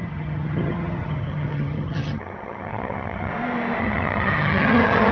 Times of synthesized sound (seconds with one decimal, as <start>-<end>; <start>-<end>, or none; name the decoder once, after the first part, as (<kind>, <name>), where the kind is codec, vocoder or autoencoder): 0.0-3.3 (vocoder, HiFi-GAN); 3.8-5.1

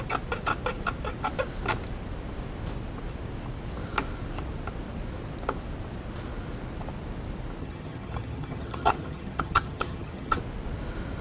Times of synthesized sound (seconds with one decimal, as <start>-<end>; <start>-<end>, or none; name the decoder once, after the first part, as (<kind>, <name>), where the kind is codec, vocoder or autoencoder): 7.6-10.4 (vocoder, HiFi-GAN)

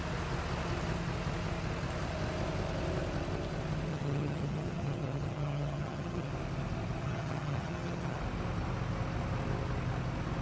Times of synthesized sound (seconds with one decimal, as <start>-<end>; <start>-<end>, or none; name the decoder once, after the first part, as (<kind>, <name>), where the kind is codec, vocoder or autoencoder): 3.9-6.3 (vocoder, HiFi-GAN); 7.0-8.2

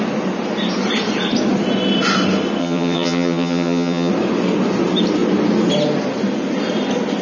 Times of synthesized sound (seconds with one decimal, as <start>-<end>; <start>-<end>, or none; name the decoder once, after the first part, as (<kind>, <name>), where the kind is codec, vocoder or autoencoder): 2.6-4.1 (vocoder, HiFi-GAN)